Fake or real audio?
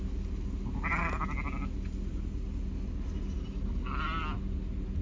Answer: real